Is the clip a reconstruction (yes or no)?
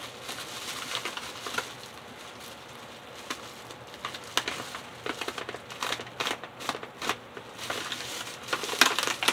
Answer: no